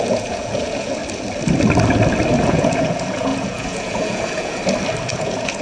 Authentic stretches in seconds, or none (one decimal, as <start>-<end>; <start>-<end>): 1.0-2.4; 4.6-5.1